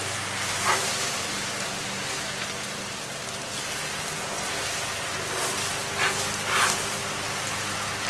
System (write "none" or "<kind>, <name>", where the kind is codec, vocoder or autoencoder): none